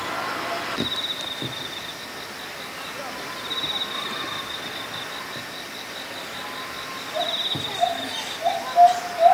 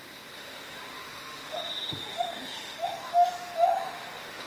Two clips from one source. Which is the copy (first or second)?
second